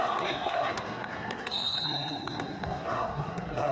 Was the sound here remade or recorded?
remade